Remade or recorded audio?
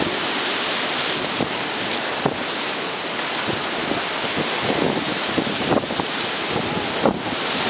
recorded